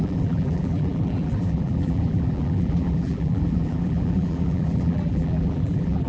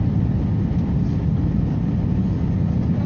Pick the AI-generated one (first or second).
first